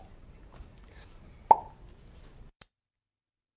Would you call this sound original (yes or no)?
yes